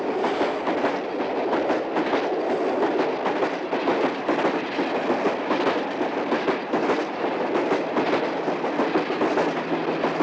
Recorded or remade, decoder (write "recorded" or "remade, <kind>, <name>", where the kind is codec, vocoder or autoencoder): recorded